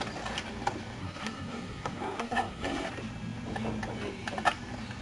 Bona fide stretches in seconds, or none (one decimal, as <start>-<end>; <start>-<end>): 0.0-1.0; 2.9-5.0